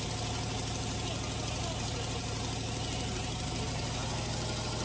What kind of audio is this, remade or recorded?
recorded